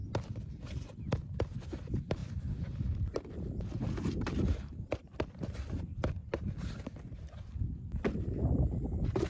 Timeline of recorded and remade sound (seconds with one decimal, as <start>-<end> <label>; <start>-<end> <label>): 0.0-1.0 recorded; 1.0-2.2 remade; 2.2-4.1 recorded; 4.1-9.3 remade